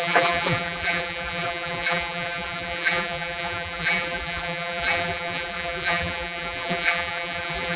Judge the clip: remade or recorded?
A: remade